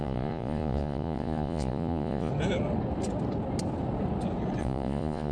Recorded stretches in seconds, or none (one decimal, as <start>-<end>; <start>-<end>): 2.3-4.6